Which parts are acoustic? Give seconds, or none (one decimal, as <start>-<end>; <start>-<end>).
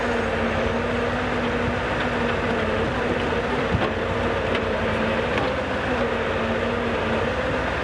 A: 0.0-2.9; 5.0-7.8